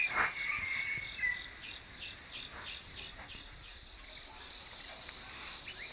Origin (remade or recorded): recorded